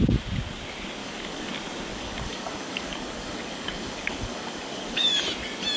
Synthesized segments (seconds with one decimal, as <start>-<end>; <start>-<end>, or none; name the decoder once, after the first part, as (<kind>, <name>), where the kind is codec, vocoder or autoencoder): 1.0-1.5 (codec, DAC); 1.9-5.2